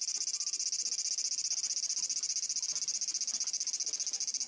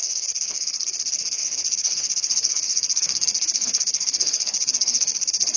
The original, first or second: first